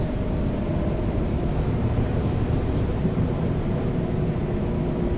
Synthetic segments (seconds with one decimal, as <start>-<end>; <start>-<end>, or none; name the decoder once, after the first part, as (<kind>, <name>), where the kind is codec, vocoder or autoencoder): 0.7-3.8 (vocoder, BigVGAN v2)